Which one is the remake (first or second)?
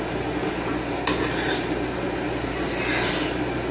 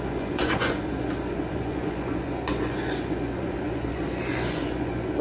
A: second